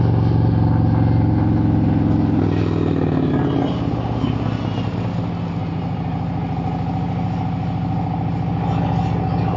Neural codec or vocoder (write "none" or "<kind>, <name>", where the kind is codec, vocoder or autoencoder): none